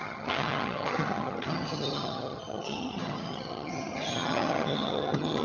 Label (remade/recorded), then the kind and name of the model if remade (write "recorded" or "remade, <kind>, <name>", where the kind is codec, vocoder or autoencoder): remade, vocoder, HiFi-GAN